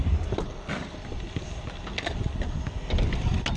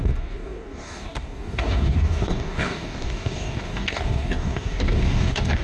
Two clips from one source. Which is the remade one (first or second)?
second